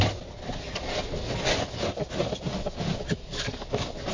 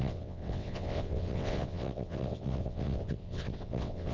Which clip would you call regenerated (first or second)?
second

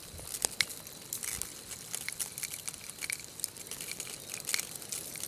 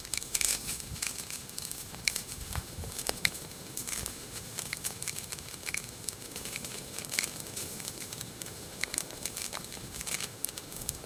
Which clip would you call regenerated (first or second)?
second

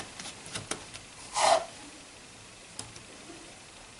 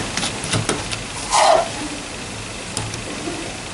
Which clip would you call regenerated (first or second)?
first